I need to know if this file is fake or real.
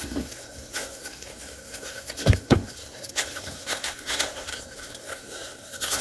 fake